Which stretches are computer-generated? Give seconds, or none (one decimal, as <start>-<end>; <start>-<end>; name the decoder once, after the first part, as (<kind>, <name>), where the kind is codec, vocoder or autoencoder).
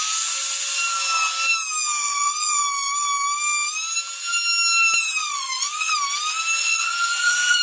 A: 2.0-2.6 (vocoder, Vocos); 5.2-5.9; 6.6-7.6